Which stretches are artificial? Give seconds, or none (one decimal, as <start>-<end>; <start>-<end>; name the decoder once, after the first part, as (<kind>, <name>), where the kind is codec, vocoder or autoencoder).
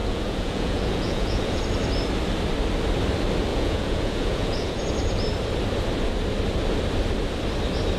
0.0-1.6 (vocoder, Vocos); 3.5-4.8